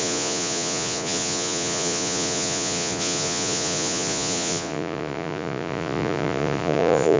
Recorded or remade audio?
remade